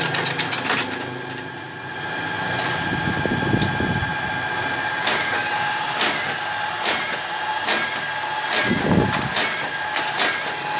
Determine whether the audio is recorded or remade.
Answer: recorded